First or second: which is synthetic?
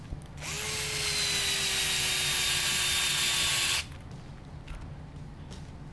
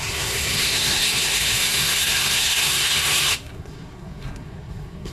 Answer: second